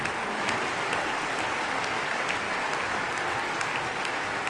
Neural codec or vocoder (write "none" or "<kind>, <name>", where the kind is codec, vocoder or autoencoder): none